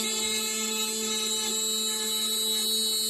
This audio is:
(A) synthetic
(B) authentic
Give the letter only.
B